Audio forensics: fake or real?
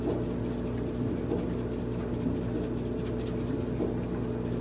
real